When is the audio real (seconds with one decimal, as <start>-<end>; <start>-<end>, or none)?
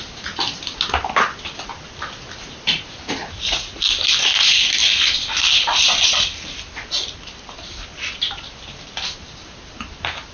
0.0-3.2; 3.8-10.3